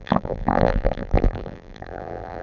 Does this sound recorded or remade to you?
remade